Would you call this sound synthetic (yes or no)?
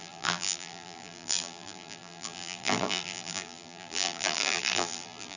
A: yes